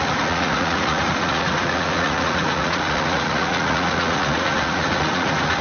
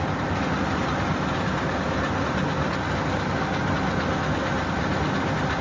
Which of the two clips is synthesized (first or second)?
first